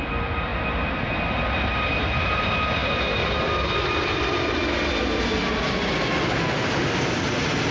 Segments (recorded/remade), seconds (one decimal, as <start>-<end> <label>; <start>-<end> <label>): 0.0-7.7 recorded